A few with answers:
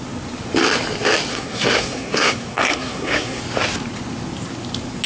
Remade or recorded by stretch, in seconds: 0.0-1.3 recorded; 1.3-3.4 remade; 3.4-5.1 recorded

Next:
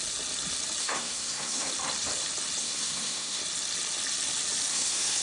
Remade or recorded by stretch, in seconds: 0.0-0.8 recorded; 0.8-1.7 remade; 1.7-2.6 recorded; 2.6-3.4 remade; 3.4-4.7 recorded; 4.7-5.2 remade

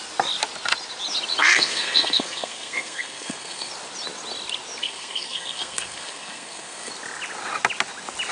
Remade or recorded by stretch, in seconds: 0.0-1.4 recorded; 1.4-3.7 remade; 3.7-4.8 recorded; 4.8-6.9 remade; 6.9-8.3 recorded

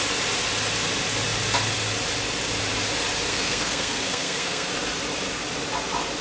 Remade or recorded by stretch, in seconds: 0.0-3.3 recorded; 3.3-4.7 remade; 4.7-6.2 recorded

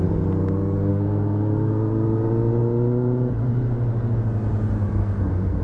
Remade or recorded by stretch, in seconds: 0.0-0.9 recorded; 0.9-1.7 remade; 1.7-5.0 recorded; 5.0-5.6 remade

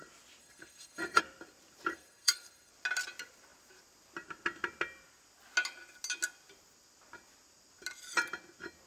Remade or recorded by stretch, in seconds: 0.0-0.4 recorded; 0.4-1.2 remade; 1.2-1.9 recorded; 1.9-2.7 remade; 2.7-8.9 recorded

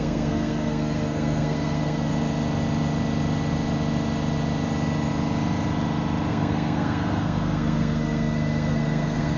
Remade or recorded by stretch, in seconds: 0.0-2.1 remade; 2.1-6.3 recorded; 6.3-9.4 remade